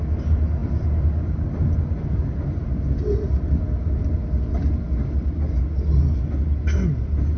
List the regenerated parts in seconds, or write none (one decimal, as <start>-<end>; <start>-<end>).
none